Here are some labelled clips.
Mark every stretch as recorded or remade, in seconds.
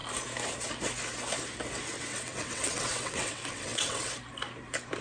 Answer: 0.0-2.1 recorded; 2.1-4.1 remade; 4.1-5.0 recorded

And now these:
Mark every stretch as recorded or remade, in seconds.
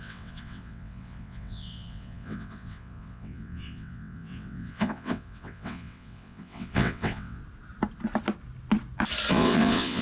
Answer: 0.0-7.4 remade; 7.4-9.3 recorded; 9.3-10.0 remade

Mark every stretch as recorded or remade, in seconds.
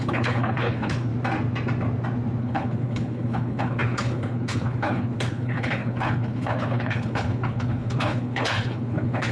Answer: 0.0-1.1 remade; 1.1-2.4 recorded; 2.4-9.3 remade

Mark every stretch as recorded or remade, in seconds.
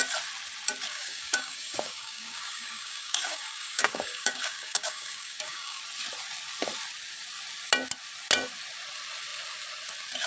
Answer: 0.0-0.9 recorded; 0.9-5.8 remade; 5.8-10.3 recorded